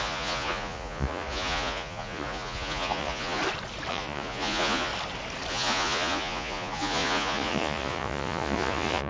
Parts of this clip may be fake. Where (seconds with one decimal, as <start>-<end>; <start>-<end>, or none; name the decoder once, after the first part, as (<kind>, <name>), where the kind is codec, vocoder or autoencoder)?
0.0-3.4 (vocoder, Vocos); 3.9-4.9; 5.5-9.1